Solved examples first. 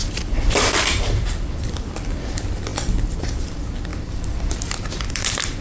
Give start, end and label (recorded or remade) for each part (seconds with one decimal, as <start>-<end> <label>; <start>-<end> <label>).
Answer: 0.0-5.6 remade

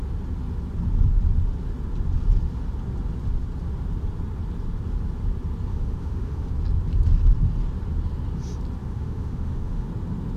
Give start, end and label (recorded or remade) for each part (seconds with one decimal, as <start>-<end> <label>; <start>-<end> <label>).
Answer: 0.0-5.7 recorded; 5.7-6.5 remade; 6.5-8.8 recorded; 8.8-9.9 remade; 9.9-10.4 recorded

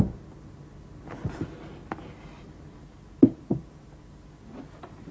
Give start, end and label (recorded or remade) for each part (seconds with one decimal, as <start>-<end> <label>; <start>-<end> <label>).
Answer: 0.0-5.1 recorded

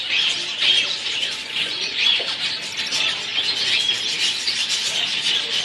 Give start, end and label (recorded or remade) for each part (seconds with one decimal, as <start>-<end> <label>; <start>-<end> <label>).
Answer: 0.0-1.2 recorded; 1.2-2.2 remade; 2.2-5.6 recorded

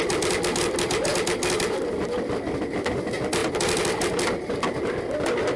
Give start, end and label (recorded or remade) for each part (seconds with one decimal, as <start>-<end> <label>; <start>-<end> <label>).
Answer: 0.0-5.6 recorded

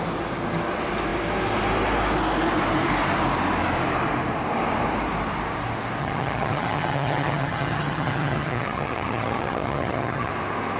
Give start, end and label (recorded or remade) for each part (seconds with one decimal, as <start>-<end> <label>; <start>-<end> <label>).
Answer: 0.0-6.0 recorded; 6.0-10.3 remade; 10.3-10.8 recorded

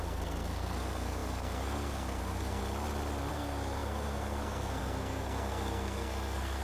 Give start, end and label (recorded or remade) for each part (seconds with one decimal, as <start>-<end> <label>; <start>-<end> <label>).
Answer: 0.0-2.6 remade; 2.6-3.3 recorded; 3.3-6.6 remade